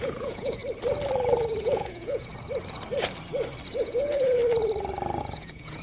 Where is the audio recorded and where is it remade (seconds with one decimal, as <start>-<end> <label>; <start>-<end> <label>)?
0.0-0.6 remade; 0.6-1.6 recorded; 1.6-2.3 remade; 2.3-3.8 recorded; 3.8-4.4 remade; 4.4-5.2 recorded; 5.2-5.8 remade